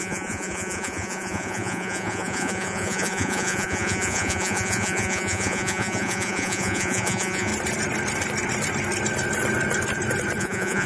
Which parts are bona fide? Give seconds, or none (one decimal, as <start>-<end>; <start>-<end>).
7.5-10.4

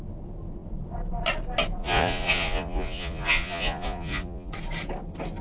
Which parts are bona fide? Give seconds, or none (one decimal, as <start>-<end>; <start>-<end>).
0.0-1.8; 4.5-5.4

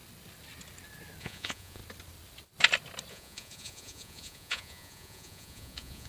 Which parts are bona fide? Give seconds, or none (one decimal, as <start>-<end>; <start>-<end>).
0.0-1.2; 1.8-3.1

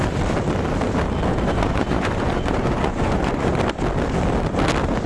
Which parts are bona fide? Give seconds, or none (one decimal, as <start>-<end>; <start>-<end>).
0.0-1.3; 3.6-5.1

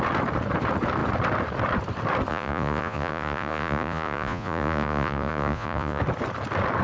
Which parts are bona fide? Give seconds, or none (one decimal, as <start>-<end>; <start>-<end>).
0.0-2.3; 6.0-6.8